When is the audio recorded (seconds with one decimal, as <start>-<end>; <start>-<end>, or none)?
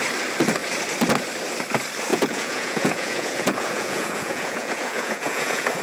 0.0-2.1